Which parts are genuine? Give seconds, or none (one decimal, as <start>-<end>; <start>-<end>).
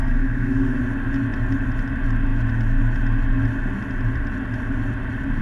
0.8-5.4